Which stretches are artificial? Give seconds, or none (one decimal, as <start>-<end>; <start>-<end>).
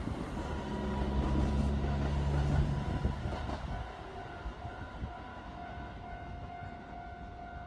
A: 5.3-6.7